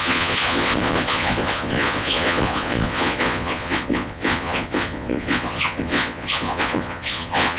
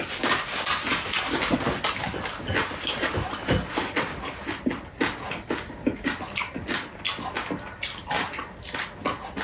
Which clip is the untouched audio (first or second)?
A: second